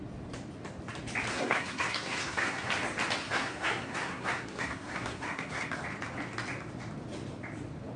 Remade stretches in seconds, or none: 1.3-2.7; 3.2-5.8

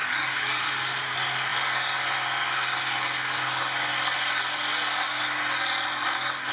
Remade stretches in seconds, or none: 0.0-0.6

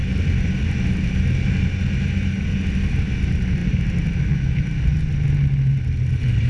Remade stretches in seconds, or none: none